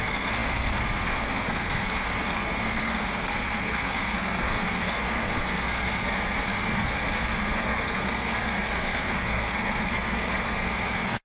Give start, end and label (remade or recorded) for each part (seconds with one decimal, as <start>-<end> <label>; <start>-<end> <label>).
0.0-11.2 remade